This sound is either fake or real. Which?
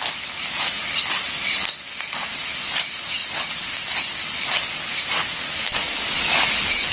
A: real